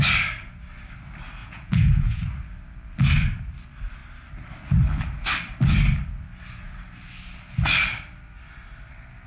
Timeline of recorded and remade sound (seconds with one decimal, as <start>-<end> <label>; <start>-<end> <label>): 0.0-1.4 recorded; 1.4-2.2 remade; 2.2-9.3 recorded